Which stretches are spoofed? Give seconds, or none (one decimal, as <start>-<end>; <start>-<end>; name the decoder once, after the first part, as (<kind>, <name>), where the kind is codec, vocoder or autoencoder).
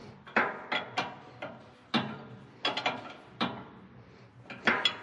none